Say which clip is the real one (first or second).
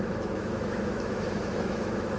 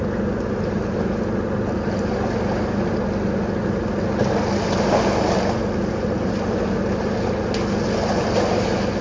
second